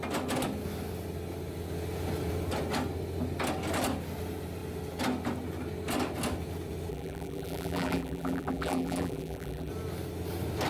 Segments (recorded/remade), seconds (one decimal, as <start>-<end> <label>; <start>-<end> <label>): 0.0-6.9 recorded; 6.9-9.7 remade; 9.7-10.7 recorded